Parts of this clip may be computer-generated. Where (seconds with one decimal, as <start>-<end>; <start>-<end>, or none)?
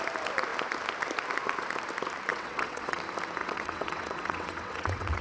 2.3-3.0; 3.4-5.2